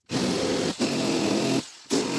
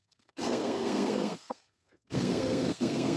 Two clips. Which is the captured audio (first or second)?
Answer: first